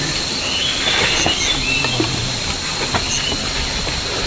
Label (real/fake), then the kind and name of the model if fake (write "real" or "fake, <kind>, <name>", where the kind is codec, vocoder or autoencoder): real